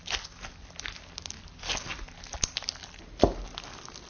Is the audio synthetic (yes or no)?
no